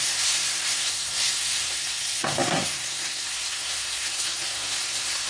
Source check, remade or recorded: remade